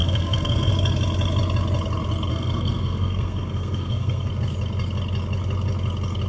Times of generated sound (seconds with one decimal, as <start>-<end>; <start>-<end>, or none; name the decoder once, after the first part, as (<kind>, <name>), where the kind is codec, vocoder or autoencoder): 0.0-0.7 (codec, SNAC); 2.3-4.3